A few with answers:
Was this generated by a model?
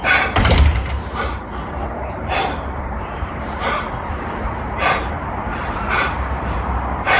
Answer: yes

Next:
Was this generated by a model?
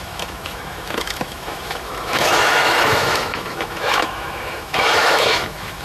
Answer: yes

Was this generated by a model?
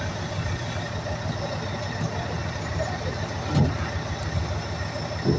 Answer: no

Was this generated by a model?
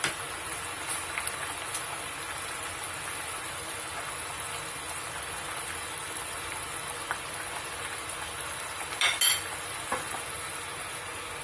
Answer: no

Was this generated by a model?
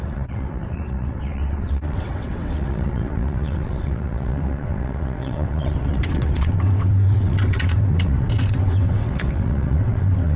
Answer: yes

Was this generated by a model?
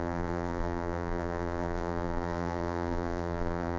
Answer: yes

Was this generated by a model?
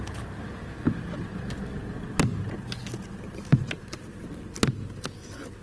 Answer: no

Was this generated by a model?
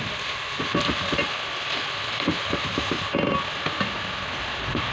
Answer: no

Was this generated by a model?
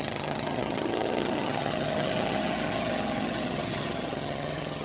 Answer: yes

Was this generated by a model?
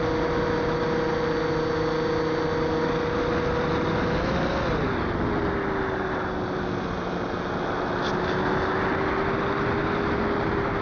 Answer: no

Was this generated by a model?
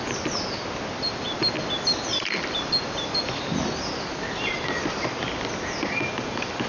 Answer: no